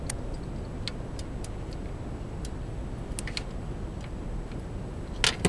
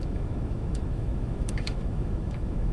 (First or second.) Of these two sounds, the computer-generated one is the second